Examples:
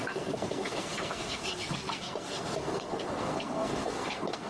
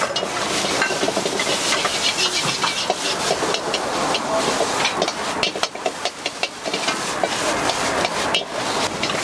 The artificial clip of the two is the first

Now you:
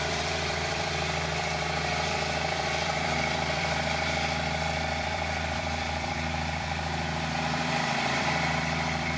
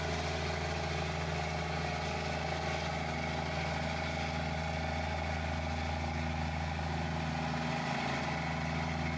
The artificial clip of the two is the first